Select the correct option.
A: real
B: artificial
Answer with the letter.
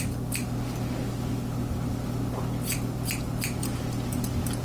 A